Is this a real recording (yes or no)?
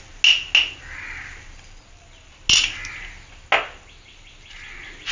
yes